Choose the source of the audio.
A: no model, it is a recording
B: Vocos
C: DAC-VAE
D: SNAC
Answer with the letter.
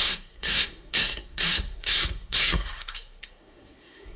D